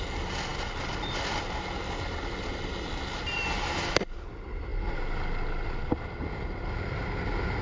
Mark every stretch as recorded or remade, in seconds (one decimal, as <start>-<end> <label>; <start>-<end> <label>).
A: 0.0-7.6 recorded